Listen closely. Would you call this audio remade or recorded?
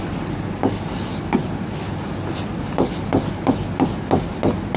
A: recorded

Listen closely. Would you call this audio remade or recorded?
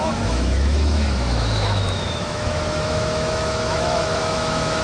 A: remade